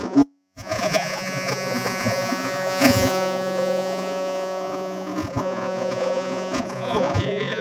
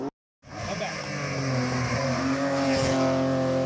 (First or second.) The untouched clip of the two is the second